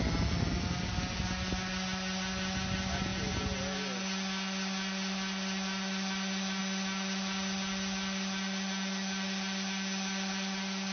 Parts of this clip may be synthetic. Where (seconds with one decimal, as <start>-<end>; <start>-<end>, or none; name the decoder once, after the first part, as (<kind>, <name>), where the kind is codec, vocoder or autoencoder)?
none